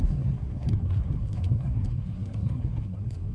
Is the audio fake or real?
fake